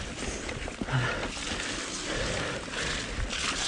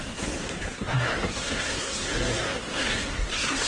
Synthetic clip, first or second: second